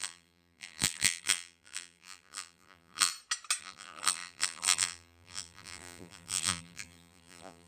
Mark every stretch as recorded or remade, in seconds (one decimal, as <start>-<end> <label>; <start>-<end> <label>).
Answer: 0.0-3.1 remade; 3.1-3.6 recorded; 3.6-7.7 remade

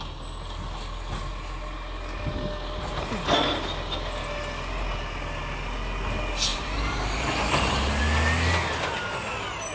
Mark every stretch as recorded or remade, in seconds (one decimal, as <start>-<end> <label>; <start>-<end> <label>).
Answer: 0.0-6.5 recorded; 6.5-8.0 remade; 8.0-9.7 recorded

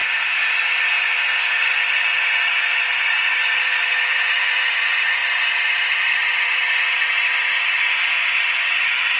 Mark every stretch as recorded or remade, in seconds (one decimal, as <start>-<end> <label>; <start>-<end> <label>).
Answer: 0.0-1.6 remade; 1.6-2.9 recorded; 2.9-9.2 remade

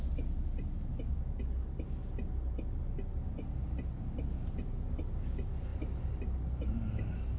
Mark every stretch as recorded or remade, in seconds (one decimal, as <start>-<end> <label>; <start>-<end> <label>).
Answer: 0.0-7.4 recorded